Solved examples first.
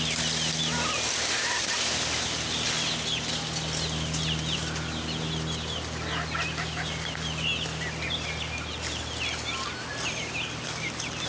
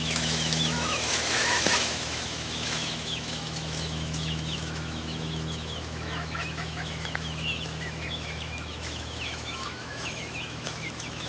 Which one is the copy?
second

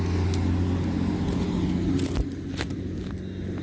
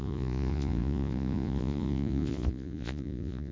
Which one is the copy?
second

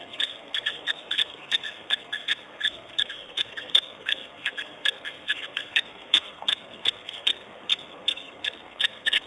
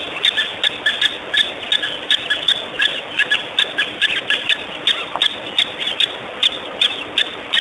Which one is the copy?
first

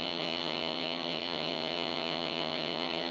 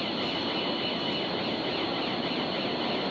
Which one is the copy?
first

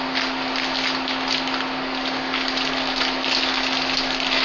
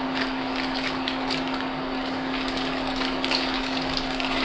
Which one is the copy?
second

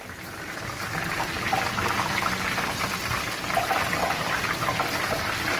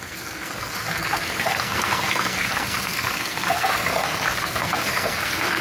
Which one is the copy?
second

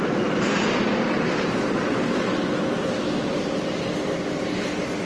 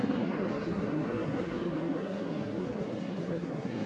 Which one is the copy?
second